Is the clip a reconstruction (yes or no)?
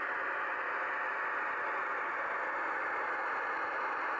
yes